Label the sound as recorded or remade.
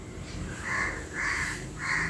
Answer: remade